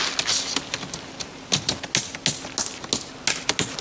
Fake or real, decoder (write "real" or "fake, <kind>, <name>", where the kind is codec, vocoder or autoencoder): real